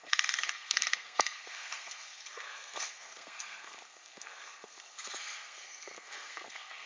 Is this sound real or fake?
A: fake